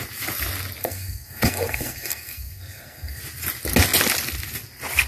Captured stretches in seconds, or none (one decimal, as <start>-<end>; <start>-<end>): 0.0-0.8; 3.2-5.1